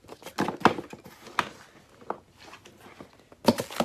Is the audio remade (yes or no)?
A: no